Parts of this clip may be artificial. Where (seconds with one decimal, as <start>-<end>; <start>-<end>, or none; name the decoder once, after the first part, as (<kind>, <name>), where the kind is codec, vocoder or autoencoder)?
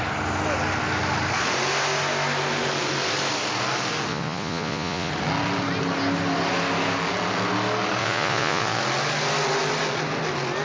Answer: 4.1-5.1 (vocoder, Vocos); 8.0-8.8